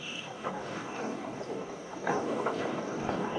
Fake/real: fake